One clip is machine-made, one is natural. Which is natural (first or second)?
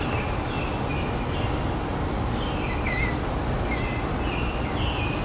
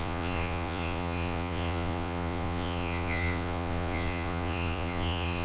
first